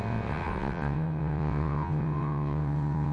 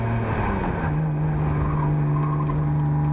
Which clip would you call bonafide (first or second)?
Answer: second